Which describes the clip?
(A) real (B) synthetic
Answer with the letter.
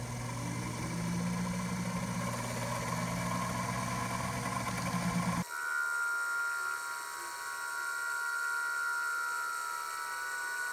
A